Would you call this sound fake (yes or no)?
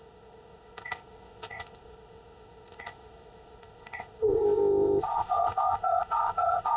yes